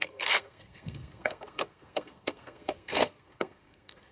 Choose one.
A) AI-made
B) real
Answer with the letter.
A